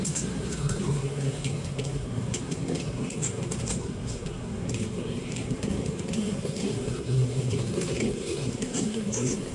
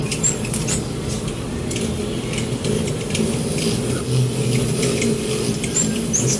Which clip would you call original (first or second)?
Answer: second